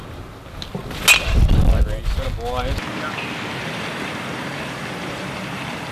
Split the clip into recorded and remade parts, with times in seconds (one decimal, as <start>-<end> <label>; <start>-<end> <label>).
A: 0.0-3.5 recorded; 3.5-5.9 remade